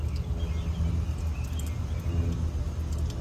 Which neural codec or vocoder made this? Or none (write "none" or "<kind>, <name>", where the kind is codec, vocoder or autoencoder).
none